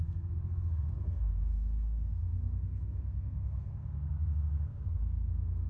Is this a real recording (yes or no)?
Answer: no